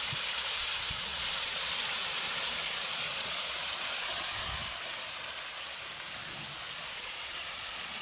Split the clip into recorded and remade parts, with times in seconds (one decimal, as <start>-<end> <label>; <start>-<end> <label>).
0.0-4.6 remade; 4.6-6.9 recorded; 6.9-8.0 remade